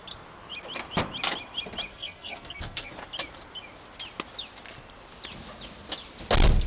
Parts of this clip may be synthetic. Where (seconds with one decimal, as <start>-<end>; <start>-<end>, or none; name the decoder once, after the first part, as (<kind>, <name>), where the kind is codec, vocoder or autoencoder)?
1.9-2.9 (codec, SNAC)